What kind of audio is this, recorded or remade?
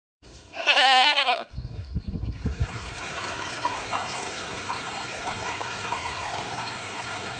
remade